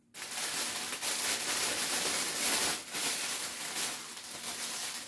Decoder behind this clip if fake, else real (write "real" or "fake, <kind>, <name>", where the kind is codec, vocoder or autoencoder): real